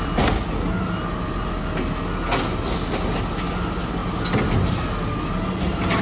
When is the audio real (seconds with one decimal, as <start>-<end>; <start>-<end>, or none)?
0.0-6.0